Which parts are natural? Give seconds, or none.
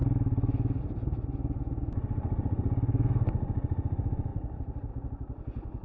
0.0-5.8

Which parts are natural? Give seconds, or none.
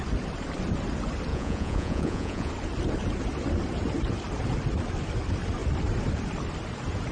0.0-1.3; 2.5-7.1